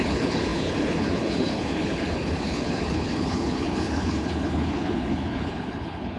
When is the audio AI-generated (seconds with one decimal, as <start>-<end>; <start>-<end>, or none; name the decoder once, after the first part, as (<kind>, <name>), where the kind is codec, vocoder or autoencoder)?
0.0-6.2 (codec, HILCodec)